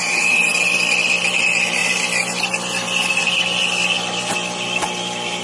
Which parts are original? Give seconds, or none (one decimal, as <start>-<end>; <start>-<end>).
0.0-5.4